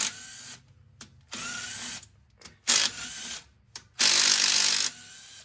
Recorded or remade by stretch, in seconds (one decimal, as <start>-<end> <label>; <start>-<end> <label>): 0.0-5.4 recorded